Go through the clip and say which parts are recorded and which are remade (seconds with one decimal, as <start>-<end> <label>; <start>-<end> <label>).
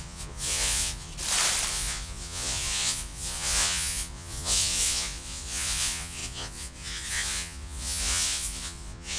0.0-1.1 remade; 1.1-1.7 recorded; 1.7-9.2 remade